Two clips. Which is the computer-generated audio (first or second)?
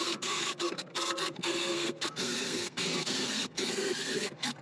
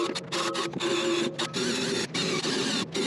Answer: first